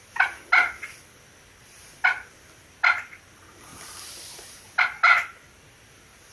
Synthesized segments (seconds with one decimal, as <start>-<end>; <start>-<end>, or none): none

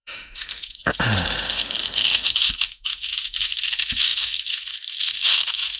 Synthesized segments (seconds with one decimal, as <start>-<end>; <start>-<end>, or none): 0.0-5.8

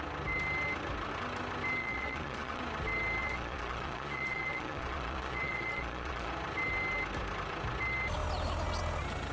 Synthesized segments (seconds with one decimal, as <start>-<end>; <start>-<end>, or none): 1.8-2.6; 3.2-6.3

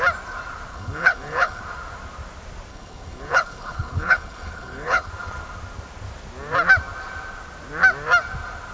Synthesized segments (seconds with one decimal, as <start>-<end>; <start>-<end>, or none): 0.7-1.6; 2.7-5.1

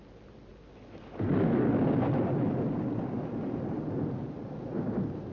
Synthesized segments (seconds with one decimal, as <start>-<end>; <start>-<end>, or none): none

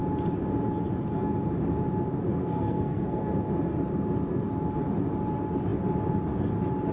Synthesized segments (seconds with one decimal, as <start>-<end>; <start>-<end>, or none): 2.3-3.3

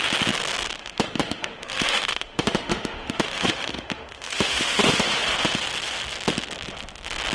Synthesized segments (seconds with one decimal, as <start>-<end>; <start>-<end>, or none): 0.8-5.2

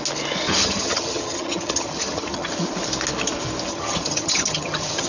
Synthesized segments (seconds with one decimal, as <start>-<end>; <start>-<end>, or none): 0.6-2.5; 3.7-5.1